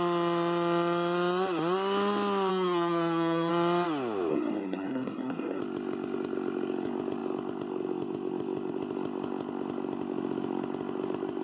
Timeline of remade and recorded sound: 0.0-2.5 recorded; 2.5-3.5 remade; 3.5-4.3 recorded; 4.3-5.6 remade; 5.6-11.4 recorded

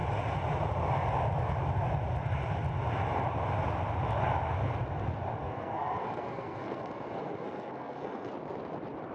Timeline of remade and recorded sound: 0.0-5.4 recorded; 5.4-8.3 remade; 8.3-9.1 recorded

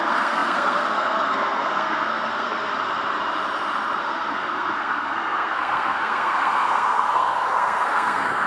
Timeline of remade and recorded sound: 0.0-2.7 remade; 2.7-4.0 recorded; 4.0-8.5 remade

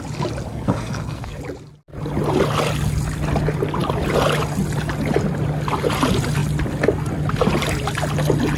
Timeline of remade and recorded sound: 0.0-0.5 recorded; 0.5-1.4 remade; 1.4-8.6 recorded